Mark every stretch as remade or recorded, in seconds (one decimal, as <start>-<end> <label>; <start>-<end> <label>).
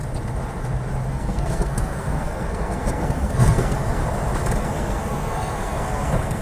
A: 0.0-1.1 recorded; 1.1-4.0 remade; 4.0-4.6 recorded; 4.6-6.4 remade